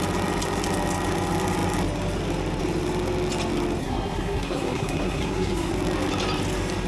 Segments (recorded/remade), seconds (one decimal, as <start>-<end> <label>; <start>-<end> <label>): 0.0-3.8 recorded; 3.8-5.7 remade; 5.7-6.9 recorded